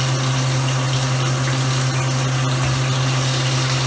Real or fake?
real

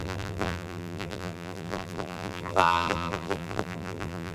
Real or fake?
fake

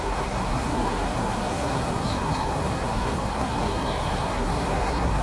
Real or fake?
fake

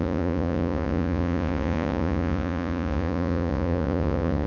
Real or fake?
fake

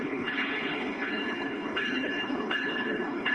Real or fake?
fake